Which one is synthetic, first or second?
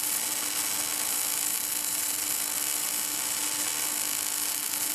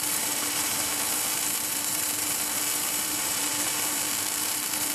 second